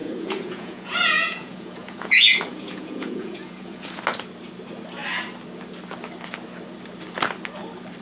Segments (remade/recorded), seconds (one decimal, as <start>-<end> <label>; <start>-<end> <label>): 0.0-4.0 remade; 4.0-8.0 recorded